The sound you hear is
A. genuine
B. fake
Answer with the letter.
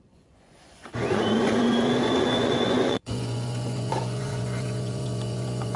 B